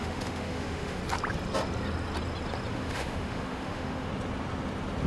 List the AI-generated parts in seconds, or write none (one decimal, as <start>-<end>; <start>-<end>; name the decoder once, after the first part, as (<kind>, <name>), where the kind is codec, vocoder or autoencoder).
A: 0.0-1.0 (autoencoder, DAC-VAE); 2.7-4.1

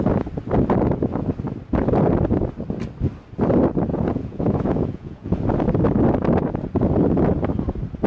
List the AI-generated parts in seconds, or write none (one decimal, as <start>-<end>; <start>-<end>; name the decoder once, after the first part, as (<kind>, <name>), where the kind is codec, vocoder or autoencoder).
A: 3.9-5.3 (vocoder, Vocos)

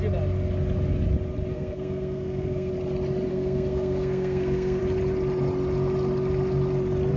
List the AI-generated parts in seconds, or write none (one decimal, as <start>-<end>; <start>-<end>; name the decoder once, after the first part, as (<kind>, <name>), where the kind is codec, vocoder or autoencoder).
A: 1.5-2.7 (codec, SNAC); 3.3-4.8

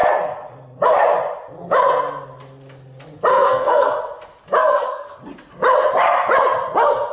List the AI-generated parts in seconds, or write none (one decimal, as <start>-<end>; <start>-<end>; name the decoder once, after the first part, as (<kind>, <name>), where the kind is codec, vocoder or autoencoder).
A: 3.3-3.9 (codec, SNAC); 4.6-5.2

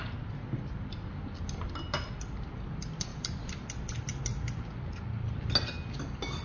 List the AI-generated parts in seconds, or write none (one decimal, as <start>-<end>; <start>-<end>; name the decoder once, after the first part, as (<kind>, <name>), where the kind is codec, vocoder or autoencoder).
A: none